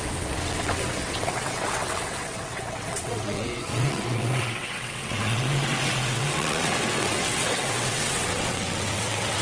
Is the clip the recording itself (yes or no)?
no